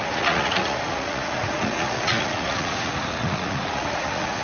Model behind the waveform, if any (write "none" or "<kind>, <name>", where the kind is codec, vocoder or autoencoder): vocoder, Vocos